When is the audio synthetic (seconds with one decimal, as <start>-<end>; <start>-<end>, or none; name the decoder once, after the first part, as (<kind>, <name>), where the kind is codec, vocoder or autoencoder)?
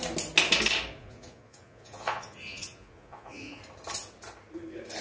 1.0-3.6 (vocoder, Vocos)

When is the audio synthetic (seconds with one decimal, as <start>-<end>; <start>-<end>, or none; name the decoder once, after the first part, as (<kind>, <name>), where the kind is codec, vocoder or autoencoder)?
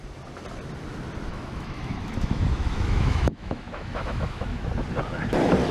1.3-4.7 (autoencoder, DAC-VAE)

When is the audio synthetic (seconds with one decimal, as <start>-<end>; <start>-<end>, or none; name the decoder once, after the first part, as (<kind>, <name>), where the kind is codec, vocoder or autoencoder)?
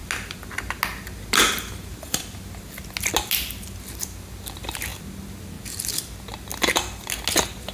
none